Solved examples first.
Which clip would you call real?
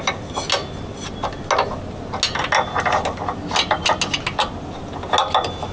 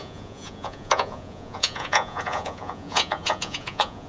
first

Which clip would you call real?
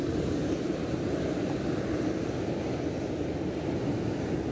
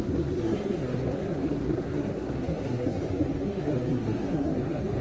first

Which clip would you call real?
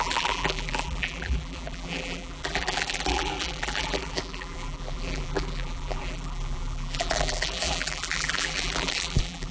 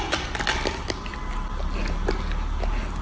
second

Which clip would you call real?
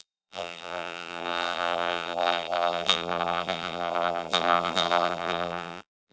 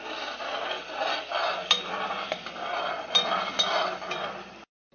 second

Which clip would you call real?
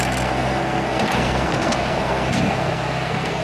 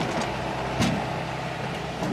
second